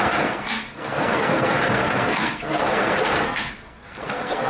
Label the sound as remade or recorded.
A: remade